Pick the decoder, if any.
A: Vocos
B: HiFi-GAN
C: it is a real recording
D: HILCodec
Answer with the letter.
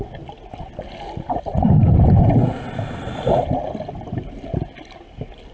C